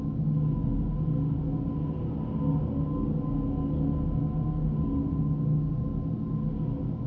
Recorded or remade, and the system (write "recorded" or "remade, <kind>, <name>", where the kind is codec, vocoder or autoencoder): recorded